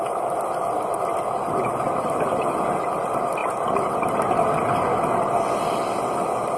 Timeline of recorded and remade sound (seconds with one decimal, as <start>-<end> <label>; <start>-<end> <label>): 0.0-6.6 recorded